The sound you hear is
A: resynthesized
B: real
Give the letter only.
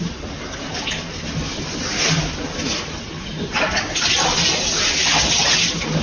B